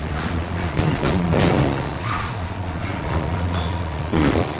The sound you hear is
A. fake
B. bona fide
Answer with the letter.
A